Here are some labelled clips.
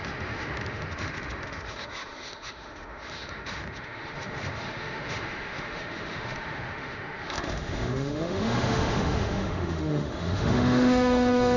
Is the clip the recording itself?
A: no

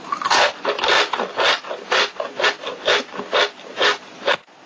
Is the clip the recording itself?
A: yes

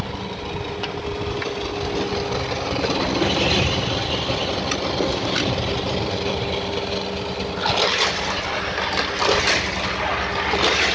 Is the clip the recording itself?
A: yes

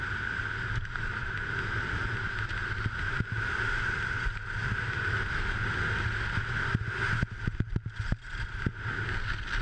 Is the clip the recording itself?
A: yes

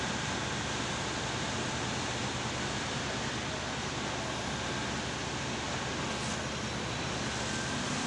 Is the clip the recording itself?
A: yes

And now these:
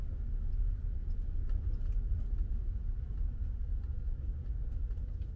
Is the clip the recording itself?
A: yes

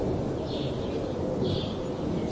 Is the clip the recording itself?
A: yes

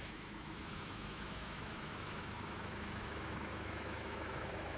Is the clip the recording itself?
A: no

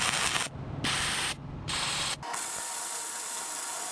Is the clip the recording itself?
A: yes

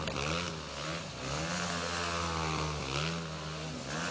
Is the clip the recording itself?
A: yes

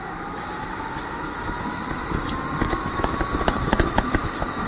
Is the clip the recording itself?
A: no